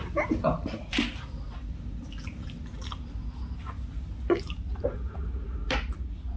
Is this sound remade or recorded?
recorded